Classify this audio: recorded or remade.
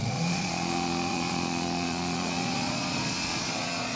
remade